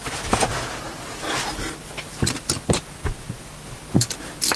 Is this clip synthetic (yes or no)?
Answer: no